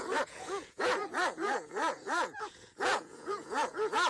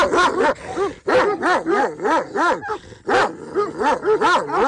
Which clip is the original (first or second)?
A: second